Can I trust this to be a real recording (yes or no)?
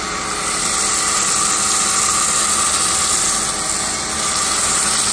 yes